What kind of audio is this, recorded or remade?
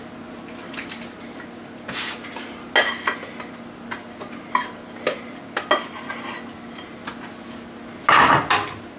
recorded